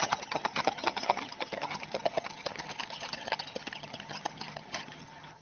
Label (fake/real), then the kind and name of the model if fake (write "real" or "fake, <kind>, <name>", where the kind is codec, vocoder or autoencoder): fake, vocoder, HiFi-GAN